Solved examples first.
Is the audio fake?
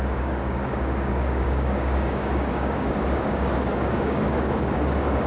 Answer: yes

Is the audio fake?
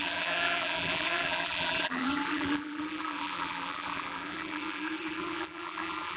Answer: yes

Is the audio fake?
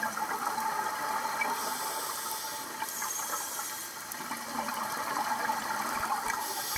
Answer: no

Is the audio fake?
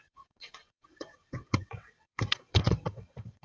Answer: yes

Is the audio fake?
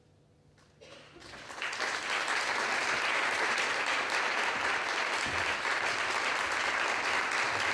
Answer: no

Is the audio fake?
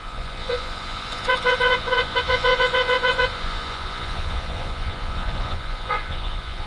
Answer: yes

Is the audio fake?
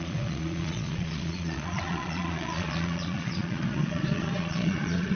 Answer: yes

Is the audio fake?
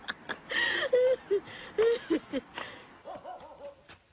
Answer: no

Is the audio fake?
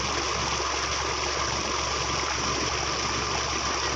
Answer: no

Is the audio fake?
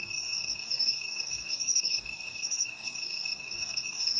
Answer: yes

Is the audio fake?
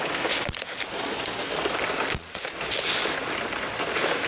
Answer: yes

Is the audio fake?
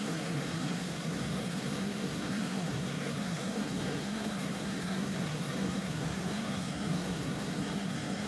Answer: yes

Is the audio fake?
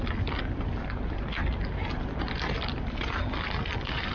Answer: no